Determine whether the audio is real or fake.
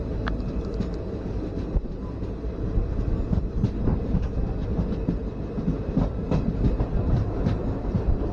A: real